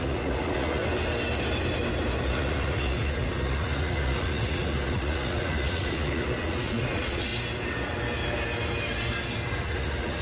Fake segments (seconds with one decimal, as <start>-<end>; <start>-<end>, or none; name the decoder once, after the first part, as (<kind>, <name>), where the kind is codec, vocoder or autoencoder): 0.0-0.8 (vocoder, Vocos); 2.2-7.3; 9.6-10.2